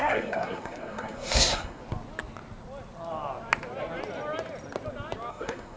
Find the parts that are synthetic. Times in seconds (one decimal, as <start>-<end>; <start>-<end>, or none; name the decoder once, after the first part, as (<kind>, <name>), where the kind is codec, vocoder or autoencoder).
0.0-1.8 (codec, SNAC); 5.3-5.8